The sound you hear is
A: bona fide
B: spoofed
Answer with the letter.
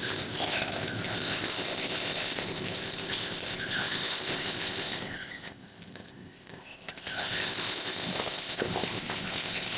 B